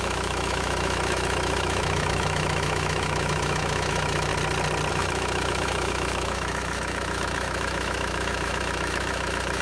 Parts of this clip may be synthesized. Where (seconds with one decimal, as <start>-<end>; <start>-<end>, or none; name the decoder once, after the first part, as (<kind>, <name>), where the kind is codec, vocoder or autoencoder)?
0.0-4.3 (autoencoder, DAC-VAE); 4.9-9.6